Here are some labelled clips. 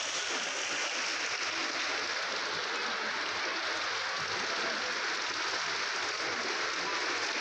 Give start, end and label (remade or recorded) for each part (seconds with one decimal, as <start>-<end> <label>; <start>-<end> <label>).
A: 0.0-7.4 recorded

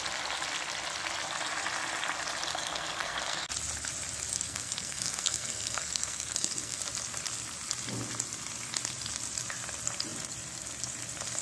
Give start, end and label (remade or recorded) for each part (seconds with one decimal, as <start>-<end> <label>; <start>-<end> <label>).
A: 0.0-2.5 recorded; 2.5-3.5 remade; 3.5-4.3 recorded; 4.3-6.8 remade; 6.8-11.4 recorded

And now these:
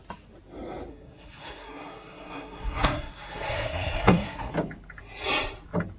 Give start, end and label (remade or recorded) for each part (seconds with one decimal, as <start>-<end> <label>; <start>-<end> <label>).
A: 0.0-0.9 recorded; 0.9-4.5 remade; 4.5-6.0 recorded

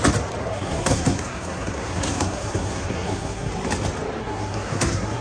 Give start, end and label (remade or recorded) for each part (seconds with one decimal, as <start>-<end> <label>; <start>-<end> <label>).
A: 0.0-0.4 recorded; 0.4-3.5 remade; 3.5-4.2 recorded; 4.2-5.2 remade

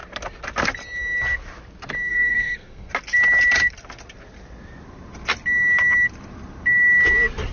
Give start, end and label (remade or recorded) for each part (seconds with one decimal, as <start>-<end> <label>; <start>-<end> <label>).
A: 0.0-2.1 recorded; 2.1-2.9 remade; 2.9-7.5 recorded

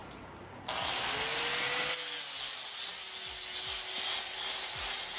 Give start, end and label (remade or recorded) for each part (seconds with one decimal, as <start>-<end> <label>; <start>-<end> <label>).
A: 0.0-5.2 recorded